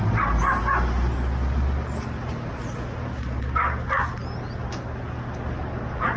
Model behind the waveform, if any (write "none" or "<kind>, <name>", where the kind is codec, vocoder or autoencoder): none